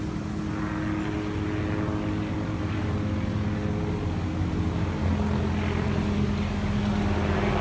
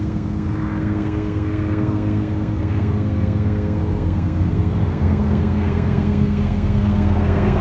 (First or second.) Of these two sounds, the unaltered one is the first